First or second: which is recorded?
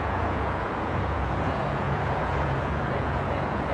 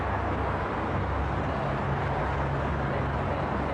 second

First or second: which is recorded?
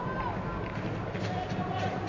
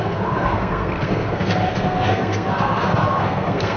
first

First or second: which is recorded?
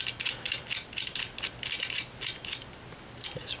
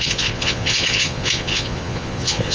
first